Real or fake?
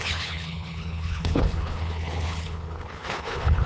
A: fake